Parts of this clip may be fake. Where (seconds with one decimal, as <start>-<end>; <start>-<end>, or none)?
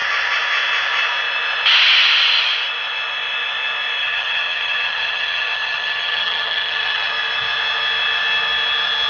4.0-7.1